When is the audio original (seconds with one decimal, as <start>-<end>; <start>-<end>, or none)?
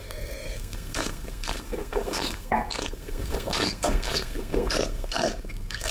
none